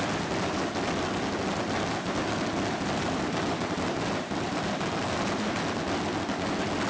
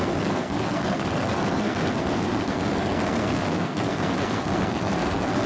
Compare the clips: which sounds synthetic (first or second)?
second